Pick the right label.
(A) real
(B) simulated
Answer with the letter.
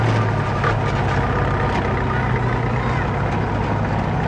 A